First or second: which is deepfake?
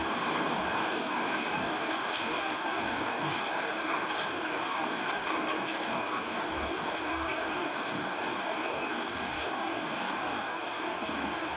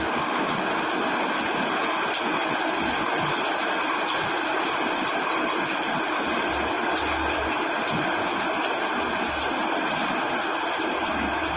first